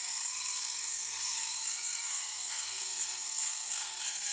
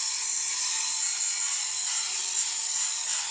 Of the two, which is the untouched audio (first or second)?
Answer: second